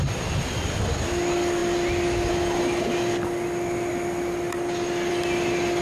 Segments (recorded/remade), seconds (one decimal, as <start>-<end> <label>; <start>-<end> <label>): 0.0-5.8 recorded